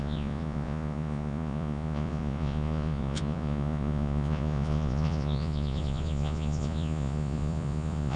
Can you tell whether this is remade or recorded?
remade